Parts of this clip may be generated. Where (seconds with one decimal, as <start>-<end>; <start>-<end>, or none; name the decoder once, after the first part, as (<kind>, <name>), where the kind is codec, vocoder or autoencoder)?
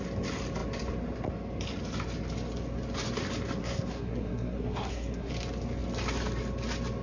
3.6-5.3 (codec, SNAC)